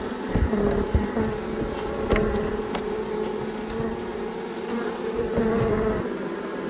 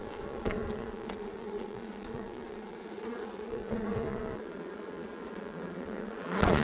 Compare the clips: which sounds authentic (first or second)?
first